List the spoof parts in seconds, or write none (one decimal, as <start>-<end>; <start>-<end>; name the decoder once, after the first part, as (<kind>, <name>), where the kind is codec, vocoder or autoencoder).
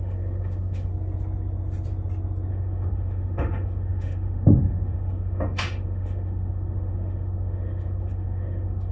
0.0-0.9 (autoencoder, DAC-VAE); 2.5-8.9